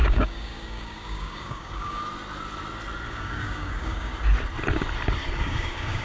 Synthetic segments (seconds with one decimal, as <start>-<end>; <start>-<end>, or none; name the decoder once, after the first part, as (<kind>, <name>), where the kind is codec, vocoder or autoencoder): 0.0-2.0 (codec, DAC); 3.1-4.1; 5.4-6.0